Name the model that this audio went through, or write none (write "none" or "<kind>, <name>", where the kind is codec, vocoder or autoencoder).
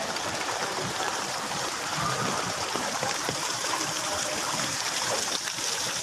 vocoder, BigVGAN v2